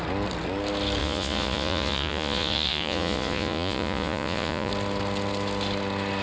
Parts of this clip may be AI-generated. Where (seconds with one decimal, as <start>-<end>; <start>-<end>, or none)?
1.0-4.7